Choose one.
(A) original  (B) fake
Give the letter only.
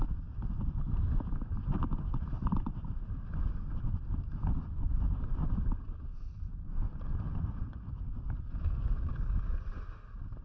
A